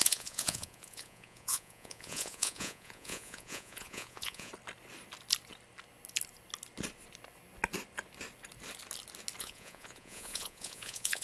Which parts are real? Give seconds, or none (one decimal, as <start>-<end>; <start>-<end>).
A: 4.5-9.4